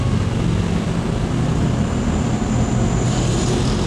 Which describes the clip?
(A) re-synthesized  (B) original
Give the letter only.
B